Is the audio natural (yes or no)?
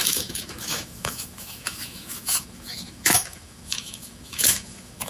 no